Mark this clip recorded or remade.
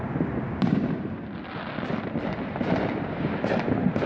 remade